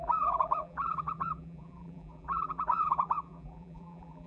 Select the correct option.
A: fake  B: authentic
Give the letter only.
A